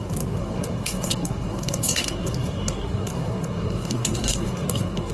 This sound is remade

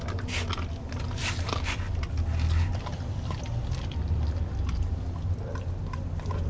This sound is recorded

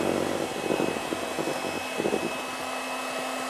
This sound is recorded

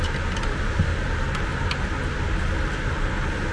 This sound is recorded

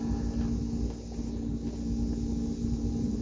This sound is recorded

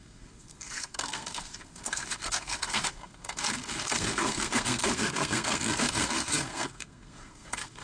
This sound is remade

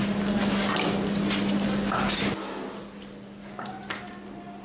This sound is recorded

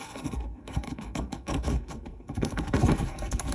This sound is remade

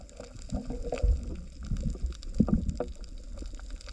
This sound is recorded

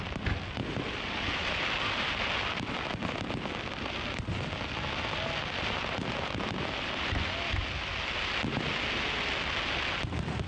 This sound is recorded